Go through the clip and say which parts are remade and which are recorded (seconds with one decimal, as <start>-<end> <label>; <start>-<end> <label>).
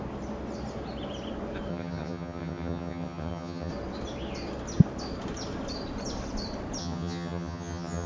0.0-1.7 recorded; 1.7-3.7 remade; 3.7-6.8 recorded; 6.8-8.1 remade